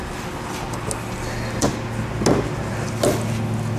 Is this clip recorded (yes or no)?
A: yes